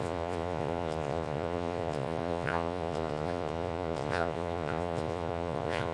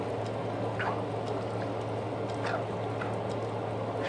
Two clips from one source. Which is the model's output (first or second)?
first